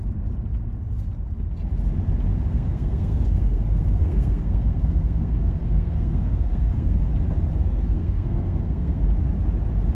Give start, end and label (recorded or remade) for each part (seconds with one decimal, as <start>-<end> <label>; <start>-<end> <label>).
0.0-2.5 recorded; 2.5-7.1 remade; 7.1-7.6 recorded; 7.6-9.0 remade; 9.0-9.9 recorded